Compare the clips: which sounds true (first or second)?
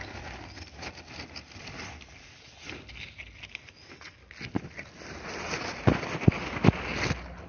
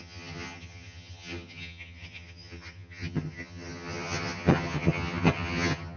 first